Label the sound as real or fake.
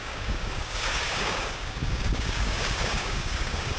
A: fake